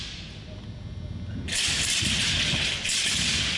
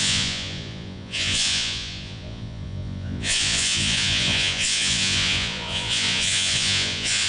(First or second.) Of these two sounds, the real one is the first